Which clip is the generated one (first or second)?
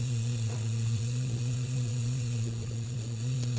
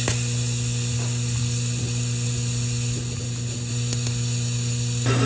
first